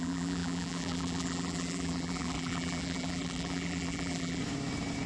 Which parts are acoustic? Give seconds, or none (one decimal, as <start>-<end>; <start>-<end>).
4.4-5.1